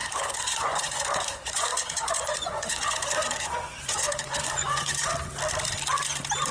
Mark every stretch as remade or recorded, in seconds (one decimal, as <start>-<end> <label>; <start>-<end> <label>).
0.0-5.1 remade; 5.1-6.5 recorded